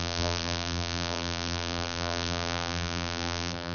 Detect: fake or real fake